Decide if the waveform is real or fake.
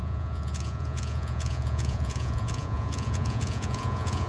fake